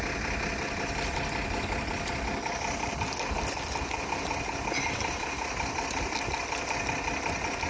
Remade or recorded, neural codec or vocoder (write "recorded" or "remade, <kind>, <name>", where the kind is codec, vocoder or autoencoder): recorded